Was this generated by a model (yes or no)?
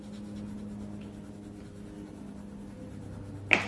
no